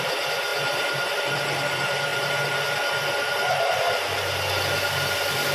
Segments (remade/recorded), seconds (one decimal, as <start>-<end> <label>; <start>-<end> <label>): 0.0-0.5 remade; 0.5-1.2 recorded; 1.2-2.1 remade; 2.1-5.5 recorded